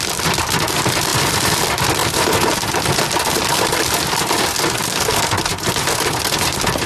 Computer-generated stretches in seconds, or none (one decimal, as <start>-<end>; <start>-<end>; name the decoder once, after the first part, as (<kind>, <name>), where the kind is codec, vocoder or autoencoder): 4.9-5.4 (codec, SNAC)

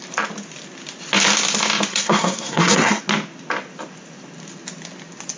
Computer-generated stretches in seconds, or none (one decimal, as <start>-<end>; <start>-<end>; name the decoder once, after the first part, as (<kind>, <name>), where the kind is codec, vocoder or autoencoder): 1.9-3.0 (codec, SNAC)